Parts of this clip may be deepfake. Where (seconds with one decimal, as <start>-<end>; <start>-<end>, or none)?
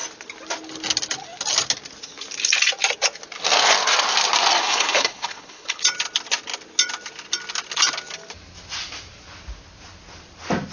4.6-5.8